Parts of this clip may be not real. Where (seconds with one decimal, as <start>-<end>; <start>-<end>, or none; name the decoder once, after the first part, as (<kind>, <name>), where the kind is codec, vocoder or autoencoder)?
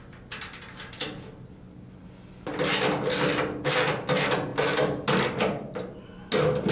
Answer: none